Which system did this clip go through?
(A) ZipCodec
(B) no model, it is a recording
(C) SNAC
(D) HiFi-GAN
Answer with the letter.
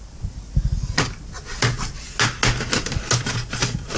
B